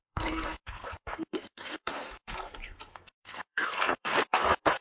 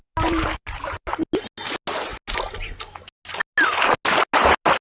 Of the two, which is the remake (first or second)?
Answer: first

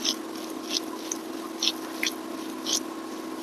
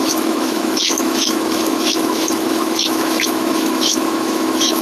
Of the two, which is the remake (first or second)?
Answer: second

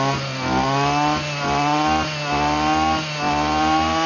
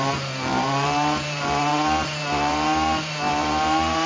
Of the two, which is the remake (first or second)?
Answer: second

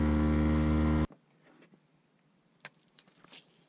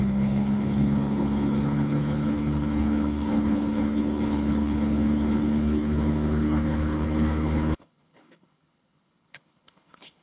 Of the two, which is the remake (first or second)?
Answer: second